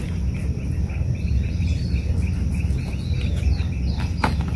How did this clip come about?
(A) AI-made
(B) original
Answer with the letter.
B